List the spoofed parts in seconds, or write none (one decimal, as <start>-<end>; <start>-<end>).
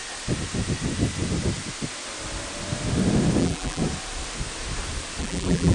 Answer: 3.4-3.8; 5.2-5.7